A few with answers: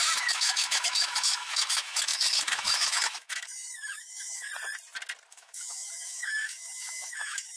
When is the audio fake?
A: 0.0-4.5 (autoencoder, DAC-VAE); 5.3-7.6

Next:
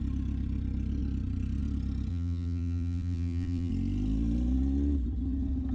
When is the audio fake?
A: 2.1-3.7 (vocoder, BigVGAN v2)

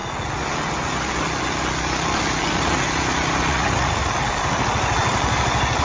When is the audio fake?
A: 3.5-4.0 (vocoder, Vocos)